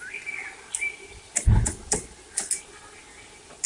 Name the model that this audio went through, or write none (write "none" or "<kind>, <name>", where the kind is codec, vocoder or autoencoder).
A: none